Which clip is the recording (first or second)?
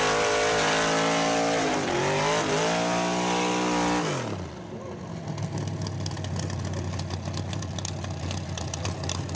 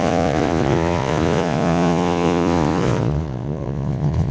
first